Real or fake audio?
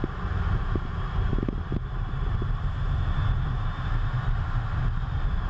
real